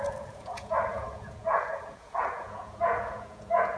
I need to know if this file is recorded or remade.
remade